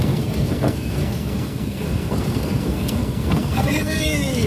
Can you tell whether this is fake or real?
fake